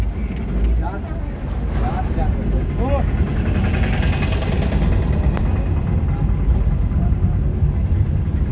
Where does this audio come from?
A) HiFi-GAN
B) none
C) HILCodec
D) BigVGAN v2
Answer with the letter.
B